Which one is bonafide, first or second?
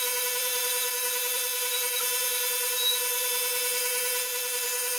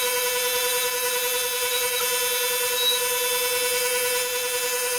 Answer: second